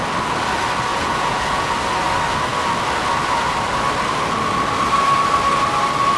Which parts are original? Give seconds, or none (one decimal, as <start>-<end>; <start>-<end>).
0.0-0.9; 1.7-6.2